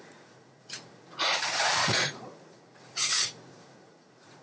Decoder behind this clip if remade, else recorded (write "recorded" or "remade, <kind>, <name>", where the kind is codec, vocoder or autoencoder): remade, vocoder, Vocos